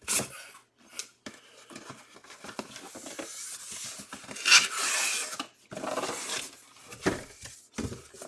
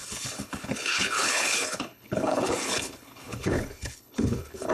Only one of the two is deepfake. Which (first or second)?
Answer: second